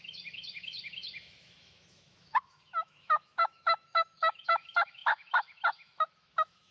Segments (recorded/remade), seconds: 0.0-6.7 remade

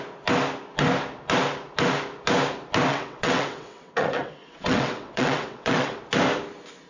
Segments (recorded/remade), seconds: 0.0-2.9 recorded; 2.9-6.0 remade; 6.0-6.9 recorded